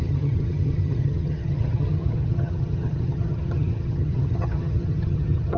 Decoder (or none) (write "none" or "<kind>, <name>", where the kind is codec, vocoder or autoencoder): vocoder, HiFi-GAN